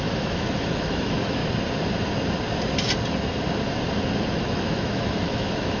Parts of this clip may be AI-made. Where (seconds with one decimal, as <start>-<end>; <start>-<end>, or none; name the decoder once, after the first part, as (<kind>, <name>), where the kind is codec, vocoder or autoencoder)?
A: 0.0-1.4 (autoencoder, DAC-VAE); 4.4-5.8